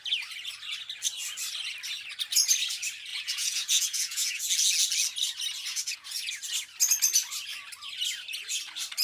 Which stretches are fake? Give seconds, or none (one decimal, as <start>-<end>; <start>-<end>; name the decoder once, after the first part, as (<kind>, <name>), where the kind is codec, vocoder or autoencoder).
3.1-4.5 (vocoder, Vocos); 5.7-6.3